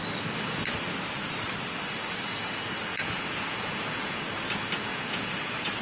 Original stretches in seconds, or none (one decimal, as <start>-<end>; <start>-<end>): 0.0-2.9; 4.2-4.9